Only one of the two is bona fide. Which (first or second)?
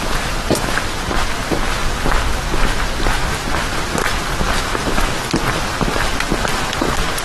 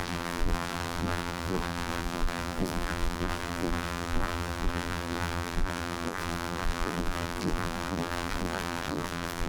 first